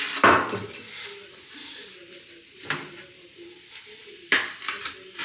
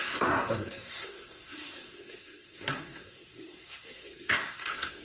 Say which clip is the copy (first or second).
second